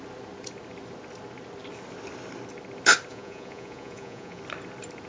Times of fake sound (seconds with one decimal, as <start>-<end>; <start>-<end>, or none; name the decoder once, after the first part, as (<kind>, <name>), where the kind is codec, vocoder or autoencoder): 3.1-4.4 (vocoder, Vocos)